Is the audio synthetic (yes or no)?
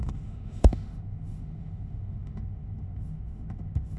yes